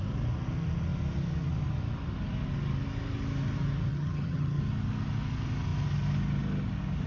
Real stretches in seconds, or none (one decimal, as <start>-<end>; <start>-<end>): 0.0-3.9; 4.6-7.1